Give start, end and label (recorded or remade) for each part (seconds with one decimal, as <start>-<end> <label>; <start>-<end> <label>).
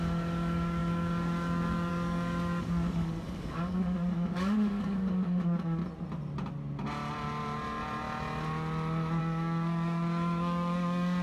0.0-5.8 remade; 5.8-9.2 recorded; 9.2-11.2 remade